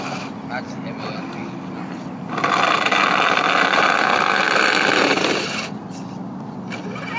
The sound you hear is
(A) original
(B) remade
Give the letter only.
A